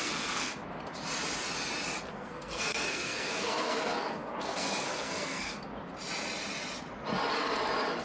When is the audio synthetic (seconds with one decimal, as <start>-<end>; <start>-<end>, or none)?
0.0-0.6; 2.1-5.7